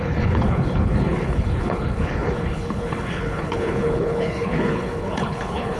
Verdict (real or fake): fake